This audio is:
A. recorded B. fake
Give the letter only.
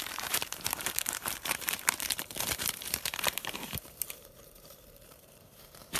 B